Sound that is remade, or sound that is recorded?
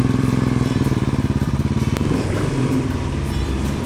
remade